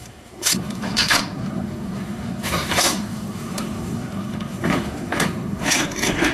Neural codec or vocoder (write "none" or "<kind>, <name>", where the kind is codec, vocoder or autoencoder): codec, SNAC